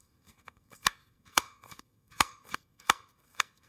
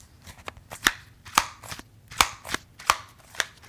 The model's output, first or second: first